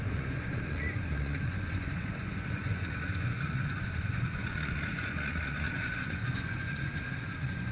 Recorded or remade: remade